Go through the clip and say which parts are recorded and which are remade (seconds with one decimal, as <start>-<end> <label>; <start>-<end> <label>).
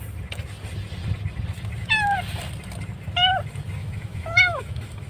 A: 0.0-3.8 recorded; 3.8-5.1 remade